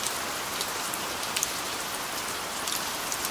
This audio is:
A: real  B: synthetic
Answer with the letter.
A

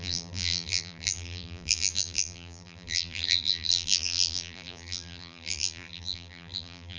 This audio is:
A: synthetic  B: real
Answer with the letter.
A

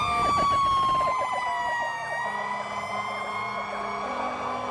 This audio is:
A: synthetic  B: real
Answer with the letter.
B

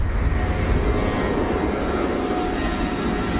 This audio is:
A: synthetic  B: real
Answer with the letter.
B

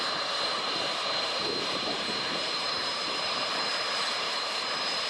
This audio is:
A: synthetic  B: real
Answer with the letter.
A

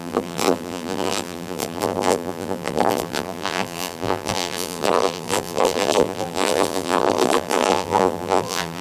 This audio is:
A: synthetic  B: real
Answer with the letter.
A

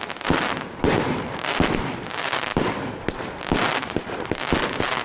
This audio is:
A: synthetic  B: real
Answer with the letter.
A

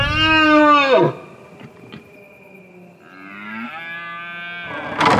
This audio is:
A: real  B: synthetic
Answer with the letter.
A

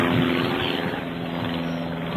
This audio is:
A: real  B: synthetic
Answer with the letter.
A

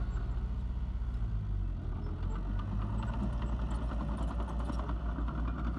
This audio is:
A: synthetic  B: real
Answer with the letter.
B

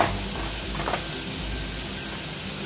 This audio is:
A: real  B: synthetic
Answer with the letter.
A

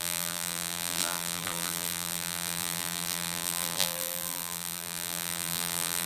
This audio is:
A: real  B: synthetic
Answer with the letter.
B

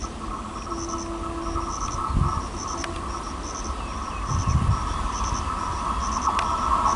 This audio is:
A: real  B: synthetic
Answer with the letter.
A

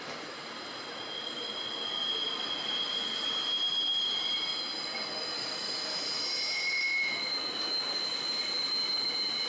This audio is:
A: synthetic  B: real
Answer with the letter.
B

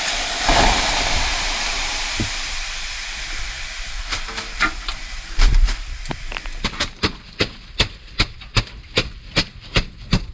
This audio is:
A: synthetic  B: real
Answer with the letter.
A